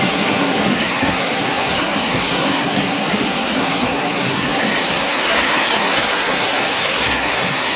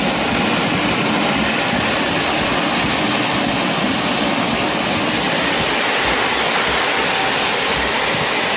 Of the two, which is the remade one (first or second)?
first